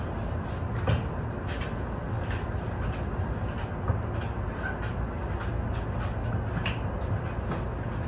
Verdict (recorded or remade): recorded